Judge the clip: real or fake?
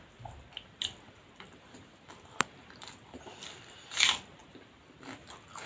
real